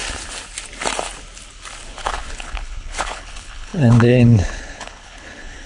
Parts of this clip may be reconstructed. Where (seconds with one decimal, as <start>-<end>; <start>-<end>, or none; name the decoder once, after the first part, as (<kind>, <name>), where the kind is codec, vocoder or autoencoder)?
1.9-5.7 (codec, HILCodec)